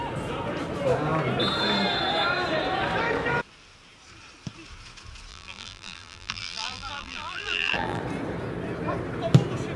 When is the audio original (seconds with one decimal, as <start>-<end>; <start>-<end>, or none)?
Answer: 0.0-5.3; 8.0-9.8

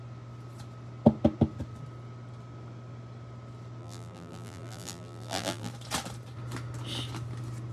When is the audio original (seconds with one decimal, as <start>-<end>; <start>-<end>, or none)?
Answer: 0.0-3.8; 5.7-7.7